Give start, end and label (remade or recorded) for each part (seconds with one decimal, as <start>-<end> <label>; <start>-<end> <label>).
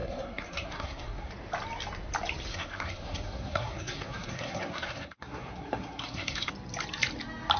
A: 0.0-1.3 remade; 1.3-2.5 recorded; 2.5-6.5 remade; 6.5-7.6 recorded